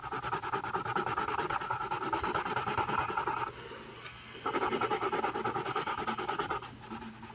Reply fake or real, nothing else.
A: real